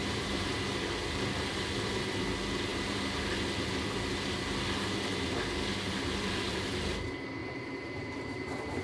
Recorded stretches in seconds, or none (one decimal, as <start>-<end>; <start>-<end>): 0.5-7.4